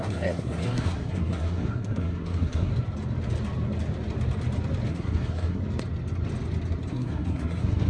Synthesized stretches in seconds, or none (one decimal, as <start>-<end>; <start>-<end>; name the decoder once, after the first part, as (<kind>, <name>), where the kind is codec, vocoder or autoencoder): 0.0-2.7 (codec, SNAC); 4.9-5.6; 6.9-7.9